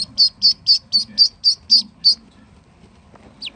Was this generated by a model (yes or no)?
no